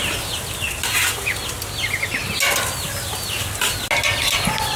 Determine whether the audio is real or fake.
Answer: real